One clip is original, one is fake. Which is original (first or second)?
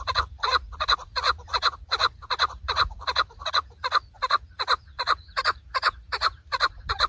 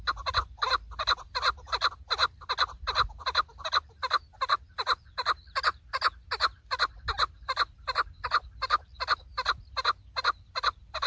second